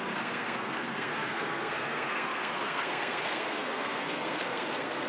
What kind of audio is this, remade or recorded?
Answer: remade